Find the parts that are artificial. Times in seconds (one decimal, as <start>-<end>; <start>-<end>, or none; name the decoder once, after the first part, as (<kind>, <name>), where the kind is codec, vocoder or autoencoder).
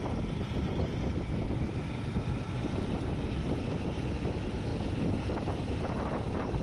none